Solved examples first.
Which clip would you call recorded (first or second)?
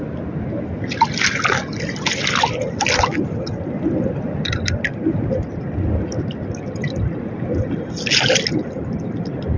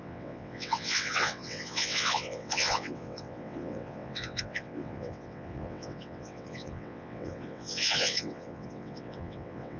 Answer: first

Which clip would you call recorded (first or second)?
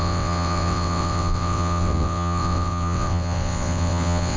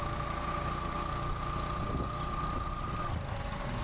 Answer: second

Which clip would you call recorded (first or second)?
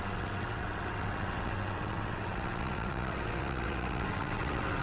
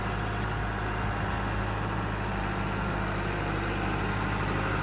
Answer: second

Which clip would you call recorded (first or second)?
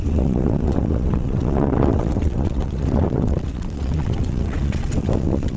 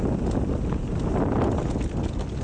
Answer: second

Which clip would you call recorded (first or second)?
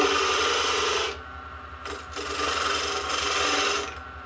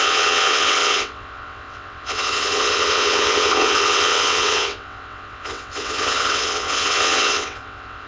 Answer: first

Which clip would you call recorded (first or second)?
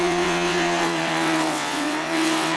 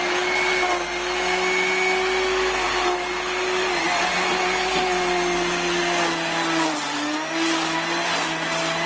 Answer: second